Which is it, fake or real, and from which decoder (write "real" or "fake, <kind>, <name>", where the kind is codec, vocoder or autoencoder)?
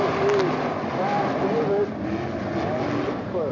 real